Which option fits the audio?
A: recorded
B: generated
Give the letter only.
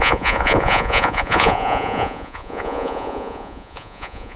B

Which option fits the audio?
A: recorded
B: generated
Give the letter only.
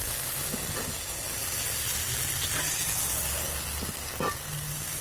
A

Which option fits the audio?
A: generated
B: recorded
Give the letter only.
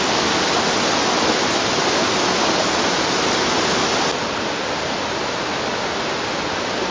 B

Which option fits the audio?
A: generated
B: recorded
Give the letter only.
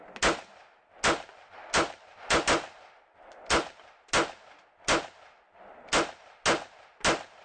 B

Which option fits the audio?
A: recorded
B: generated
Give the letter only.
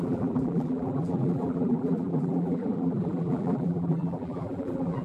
B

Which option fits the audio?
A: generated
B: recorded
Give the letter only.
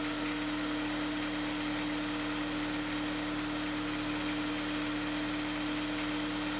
B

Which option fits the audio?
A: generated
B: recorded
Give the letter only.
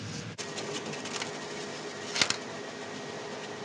B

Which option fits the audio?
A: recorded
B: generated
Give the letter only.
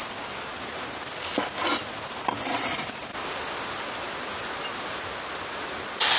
A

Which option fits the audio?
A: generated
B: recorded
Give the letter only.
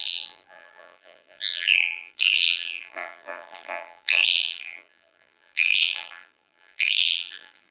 A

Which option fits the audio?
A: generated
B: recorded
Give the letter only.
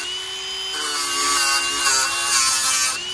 B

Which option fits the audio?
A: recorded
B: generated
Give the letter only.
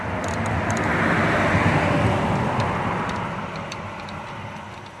A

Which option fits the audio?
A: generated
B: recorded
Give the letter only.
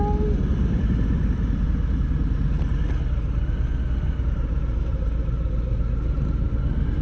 B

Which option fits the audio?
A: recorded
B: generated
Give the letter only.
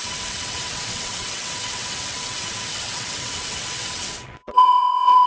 B